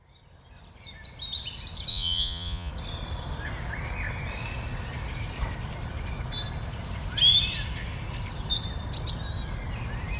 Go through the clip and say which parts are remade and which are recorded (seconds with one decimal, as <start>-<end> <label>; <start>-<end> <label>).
0.0-1.9 recorded; 1.9-2.7 remade; 2.7-10.2 recorded